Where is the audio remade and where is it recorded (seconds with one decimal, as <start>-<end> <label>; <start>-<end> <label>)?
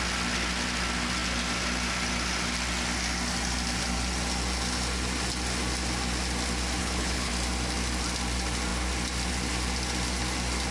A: 0.0-6.8 recorded; 6.8-7.3 remade; 7.3-10.7 recorded